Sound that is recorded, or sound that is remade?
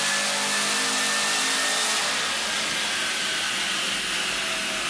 recorded